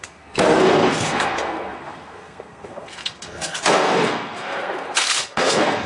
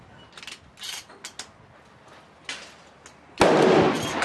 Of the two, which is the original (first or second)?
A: second